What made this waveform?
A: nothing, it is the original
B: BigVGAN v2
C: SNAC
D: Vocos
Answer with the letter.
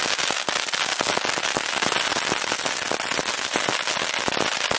A